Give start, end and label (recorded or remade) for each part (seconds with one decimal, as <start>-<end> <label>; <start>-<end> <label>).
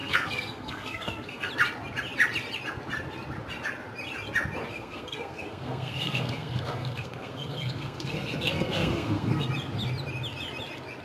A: 0.0-1.5 remade; 1.5-4.7 recorded; 4.7-9.5 remade; 9.5-11.0 recorded